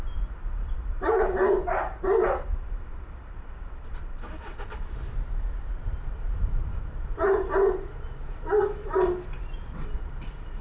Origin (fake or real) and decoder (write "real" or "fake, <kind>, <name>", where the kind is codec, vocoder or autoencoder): real